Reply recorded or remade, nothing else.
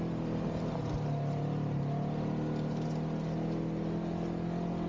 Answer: recorded